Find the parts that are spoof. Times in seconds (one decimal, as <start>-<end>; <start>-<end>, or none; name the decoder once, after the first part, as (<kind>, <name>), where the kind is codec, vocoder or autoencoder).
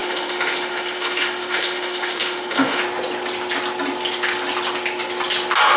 0.0-2.8 (autoencoder, DAC-VAE)